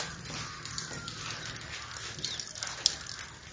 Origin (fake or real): real